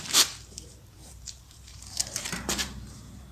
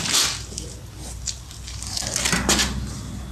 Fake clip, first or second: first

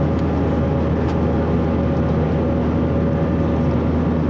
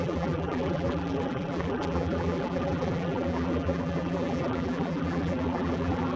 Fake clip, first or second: second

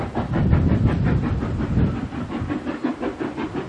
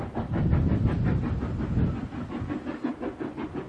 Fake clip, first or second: first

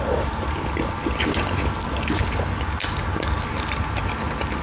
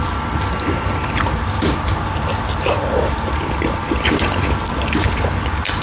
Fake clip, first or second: second